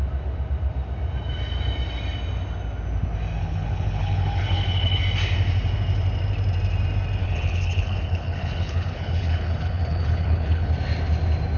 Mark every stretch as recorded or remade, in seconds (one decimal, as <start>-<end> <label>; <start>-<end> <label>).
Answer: 0.0-3.4 recorded; 3.4-5.0 remade; 5.0-7.2 recorded; 7.2-10.7 remade; 10.7-11.6 recorded